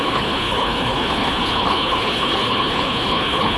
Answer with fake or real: fake